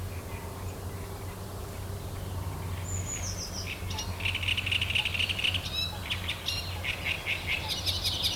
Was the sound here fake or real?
real